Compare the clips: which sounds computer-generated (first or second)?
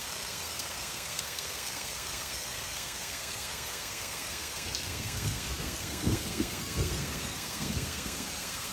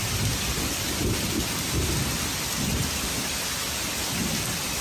first